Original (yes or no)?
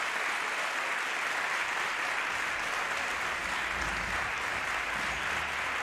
yes